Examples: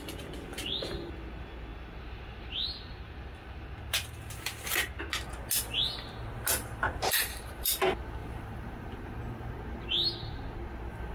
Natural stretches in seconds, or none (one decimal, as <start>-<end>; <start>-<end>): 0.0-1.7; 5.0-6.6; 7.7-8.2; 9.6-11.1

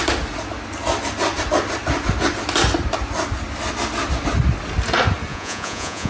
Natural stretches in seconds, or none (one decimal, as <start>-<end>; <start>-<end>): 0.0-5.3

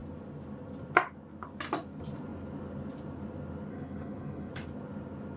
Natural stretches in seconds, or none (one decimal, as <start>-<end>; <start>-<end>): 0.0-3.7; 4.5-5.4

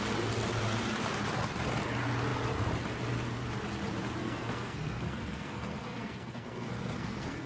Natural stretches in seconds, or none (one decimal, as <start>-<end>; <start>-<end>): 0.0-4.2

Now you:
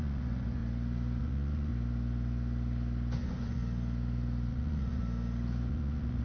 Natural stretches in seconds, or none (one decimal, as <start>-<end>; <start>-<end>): 0.6-1.2; 1.7-3.2; 3.6-4.5; 5.0-5.7

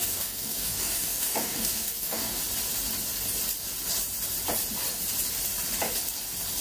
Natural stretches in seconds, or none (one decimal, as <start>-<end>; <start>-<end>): 2.4-6.6

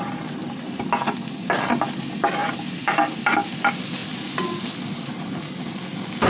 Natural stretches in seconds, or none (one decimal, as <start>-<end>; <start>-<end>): 0.0-6.3